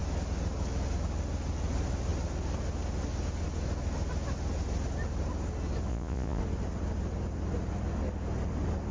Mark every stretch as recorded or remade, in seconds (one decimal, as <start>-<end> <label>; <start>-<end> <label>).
0.0-5.9 recorded; 5.9-6.4 remade; 6.4-8.9 recorded

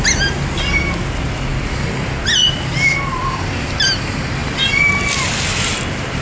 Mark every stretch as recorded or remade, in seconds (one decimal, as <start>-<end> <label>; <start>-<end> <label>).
0.0-6.2 recorded

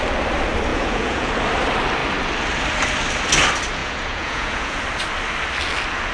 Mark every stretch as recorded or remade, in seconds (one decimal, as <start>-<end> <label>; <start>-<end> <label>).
0.0-0.7 recorded; 0.7-1.3 remade; 1.3-3.8 recorded; 3.8-4.8 remade; 4.8-6.1 recorded

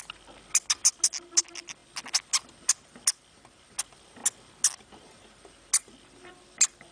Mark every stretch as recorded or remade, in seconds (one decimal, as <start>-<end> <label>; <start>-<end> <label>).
0.0-6.9 recorded

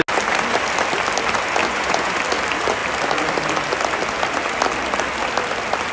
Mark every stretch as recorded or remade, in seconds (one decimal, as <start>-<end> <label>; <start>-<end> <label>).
0.0-1.6 recorded; 1.6-2.2 remade; 2.2-5.9 recorded

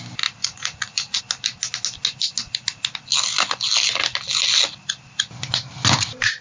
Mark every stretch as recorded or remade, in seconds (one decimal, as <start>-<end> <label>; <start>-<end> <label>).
0.0-0.4 recorded; 0.4-1.2 remade; 1.2-6.4 recorded

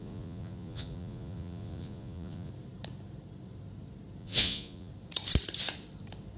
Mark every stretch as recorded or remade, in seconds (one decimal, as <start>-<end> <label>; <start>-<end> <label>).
0.0-2.5 remade; 2.5-4.2 recorded; 4.2-4.9 remade; 4.9-6.4 recorded

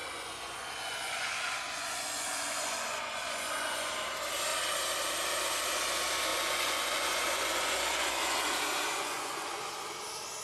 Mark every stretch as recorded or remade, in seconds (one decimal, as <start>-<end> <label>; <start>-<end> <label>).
0.0-3.9 remade; 3.9-6.3 recorded; 6.3-9.7 remade; 9.7-10.4 recorded